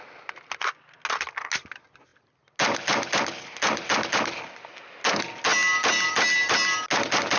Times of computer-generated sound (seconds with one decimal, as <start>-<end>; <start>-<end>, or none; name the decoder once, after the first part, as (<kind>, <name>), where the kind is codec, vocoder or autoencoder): none